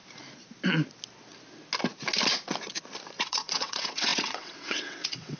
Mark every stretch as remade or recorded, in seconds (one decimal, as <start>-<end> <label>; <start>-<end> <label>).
0.0-3.2 recorded; 3.2-5.4 remade